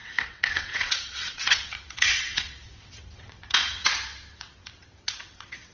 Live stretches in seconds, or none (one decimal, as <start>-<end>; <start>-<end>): none